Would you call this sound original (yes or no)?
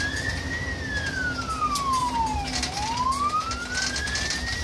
yes